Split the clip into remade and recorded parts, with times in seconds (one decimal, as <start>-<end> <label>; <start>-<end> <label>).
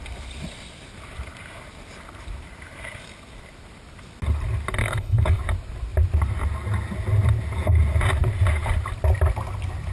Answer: 0.0-4.8 recorded; 4.8-5.4 remade; 5.4-9.9 recorded